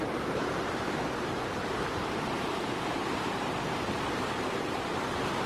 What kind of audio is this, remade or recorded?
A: remade